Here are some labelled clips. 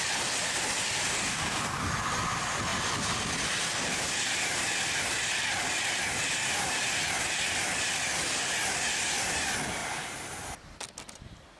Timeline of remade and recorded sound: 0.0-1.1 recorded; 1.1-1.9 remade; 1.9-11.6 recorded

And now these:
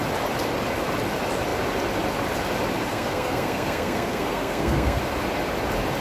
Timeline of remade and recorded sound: 0.0-2.9 recorded; 2.9-5.0 remade; 5.0-6.0 recorded

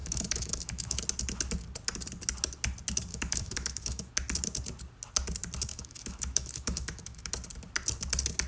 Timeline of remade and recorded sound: 0.0-1.0 remade; 1.0-3.1 recorded; 3.1-4.1 remade; 4.1-5.7 recorded; 5.7-7.3 remade; 7.3-8.5 recorded